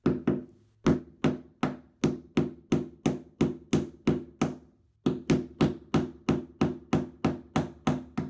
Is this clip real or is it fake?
real